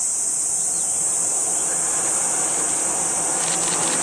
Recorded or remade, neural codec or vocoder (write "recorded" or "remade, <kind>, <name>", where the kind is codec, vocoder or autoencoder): recorded